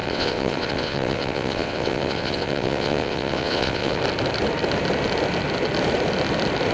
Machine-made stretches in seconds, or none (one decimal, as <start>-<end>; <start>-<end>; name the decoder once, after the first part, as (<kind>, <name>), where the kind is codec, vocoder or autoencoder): 0.0-4.0 (vocoder, WaveNeXt)